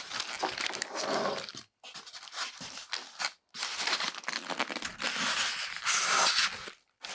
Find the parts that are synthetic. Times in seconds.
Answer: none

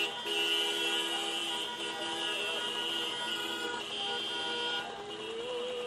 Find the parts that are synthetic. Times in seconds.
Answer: 3.3-3.8 (codec, SNAC)

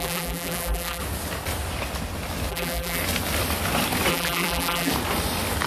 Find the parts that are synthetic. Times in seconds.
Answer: 0.0-1.0 (vocoder, BigVGAN v2); 2.5-3.0; 4.1-4.9

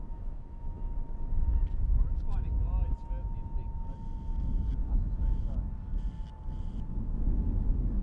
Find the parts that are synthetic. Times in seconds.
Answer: 0.0-0.8 (autoencoder, DAC-VAE); 4.8-5.7

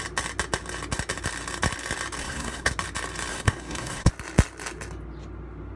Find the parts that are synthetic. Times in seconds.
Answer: 2.2-2.7 (codec, SNAC); 3.3-4.1

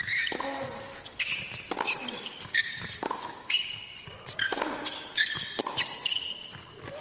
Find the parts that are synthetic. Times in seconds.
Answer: 2.0-5.6 (codec, DAC)

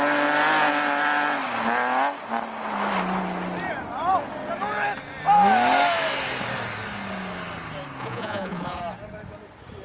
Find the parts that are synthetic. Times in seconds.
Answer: 8.0-8.8 (vocoder, Vocos)